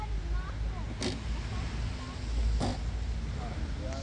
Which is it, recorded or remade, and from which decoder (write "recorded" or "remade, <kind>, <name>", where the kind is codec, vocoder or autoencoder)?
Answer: recorded